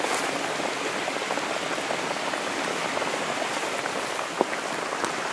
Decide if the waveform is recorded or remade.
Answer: recorded